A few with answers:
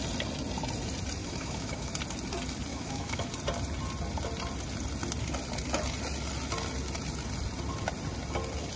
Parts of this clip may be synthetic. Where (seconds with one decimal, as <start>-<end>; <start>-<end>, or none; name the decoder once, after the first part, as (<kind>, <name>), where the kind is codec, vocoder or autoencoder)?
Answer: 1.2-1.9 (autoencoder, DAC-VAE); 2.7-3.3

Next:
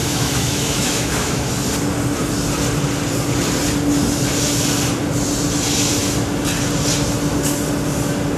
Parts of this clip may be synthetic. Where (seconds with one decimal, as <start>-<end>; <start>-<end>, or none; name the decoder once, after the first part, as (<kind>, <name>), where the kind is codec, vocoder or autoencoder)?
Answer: 0.0-1.5 (autoencoder, DAC-VAE)

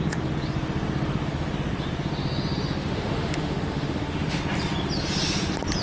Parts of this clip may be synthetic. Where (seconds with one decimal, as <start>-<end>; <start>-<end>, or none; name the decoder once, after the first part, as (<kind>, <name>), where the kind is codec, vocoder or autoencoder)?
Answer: 2.8-4.4 (autoencoder, DAC-VAE)

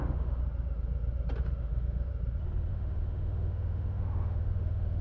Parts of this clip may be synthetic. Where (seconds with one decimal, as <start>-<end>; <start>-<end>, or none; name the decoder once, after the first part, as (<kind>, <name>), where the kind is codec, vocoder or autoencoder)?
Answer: 0.0-0.4 (autoencoder, DAC-VAE); 1.4-2.1; 2.7-5.0

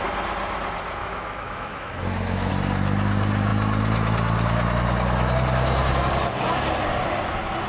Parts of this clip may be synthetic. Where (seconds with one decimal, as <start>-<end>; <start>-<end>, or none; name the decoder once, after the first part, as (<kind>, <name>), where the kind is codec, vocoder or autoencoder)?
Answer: 1.0-2.5 (autoencoder, DAC-VAE)

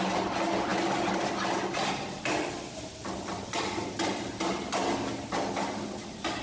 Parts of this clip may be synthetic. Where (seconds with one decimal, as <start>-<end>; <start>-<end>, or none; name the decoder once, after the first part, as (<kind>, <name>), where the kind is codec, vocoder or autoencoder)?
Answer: none